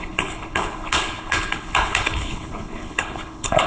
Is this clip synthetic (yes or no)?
yes